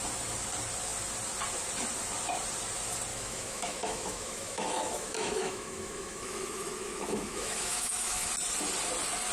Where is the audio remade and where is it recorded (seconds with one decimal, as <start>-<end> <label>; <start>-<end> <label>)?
0.0-3.1 recorded; 3.1-8.3 remade; 8.3-9.3 recorded